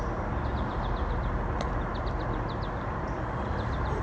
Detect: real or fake real